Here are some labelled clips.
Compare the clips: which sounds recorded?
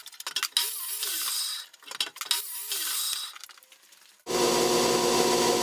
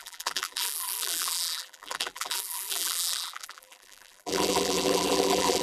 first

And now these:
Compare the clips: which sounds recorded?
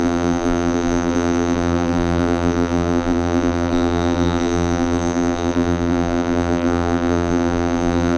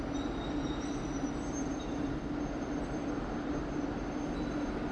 second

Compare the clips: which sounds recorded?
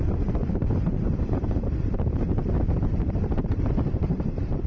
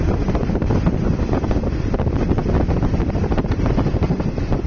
second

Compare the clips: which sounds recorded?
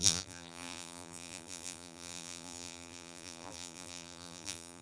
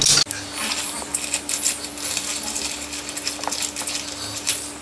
second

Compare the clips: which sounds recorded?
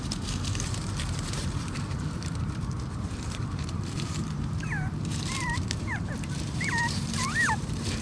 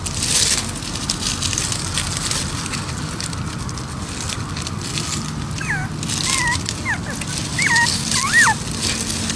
second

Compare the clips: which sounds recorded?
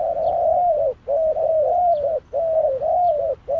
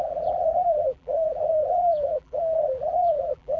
first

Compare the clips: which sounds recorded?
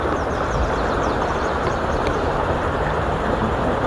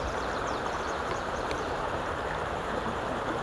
first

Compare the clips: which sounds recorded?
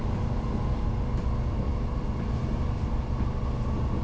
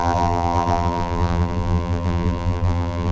first